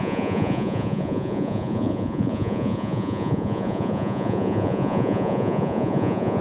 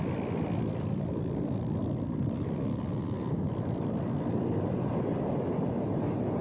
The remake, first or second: first